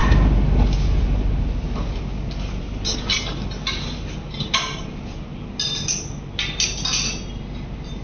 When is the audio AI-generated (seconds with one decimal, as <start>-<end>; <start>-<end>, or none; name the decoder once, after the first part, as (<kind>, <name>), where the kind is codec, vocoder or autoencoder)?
none